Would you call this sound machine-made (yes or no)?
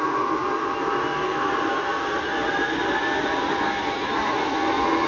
no